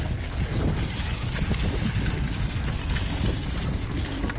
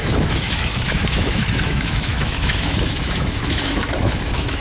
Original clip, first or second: first